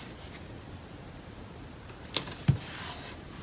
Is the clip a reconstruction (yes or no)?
no